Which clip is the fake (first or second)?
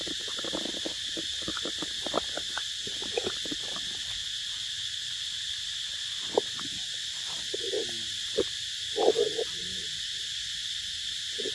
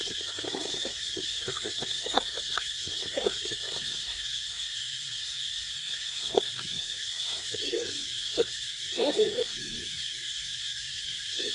second